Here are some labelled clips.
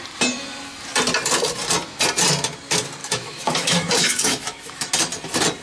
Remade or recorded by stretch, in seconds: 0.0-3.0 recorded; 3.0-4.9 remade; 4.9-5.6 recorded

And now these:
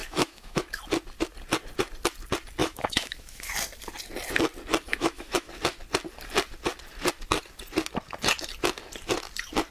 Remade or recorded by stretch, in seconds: 0.0-0.6 remade; 0.6-2.6 recorded; 2.6-3.5 remade; 3.5-4.9 recorded; 4.9-5.5 remade; 5.5-9.7 recorded

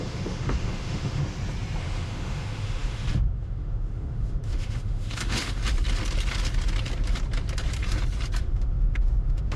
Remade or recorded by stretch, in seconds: 0.0-1.2 remade; 1.2-1.8 recorded; 1.8-5.6 remade; 5.6-8.4 recorded; 8.4-9.6 remade

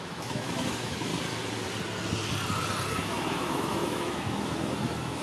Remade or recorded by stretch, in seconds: 0.0-1.1 remade; 1.1-3.0 recorded; 3.0-5.2 remade